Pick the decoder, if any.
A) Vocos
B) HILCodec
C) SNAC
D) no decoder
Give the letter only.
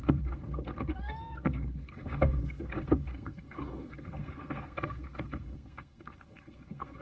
C